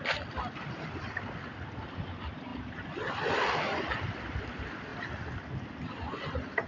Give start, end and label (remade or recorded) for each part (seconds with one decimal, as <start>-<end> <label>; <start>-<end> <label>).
0.0-4.9 remade; 4.9-6.7 recorded